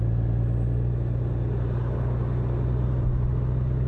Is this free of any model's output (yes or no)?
yes